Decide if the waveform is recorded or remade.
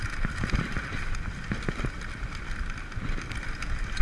recorded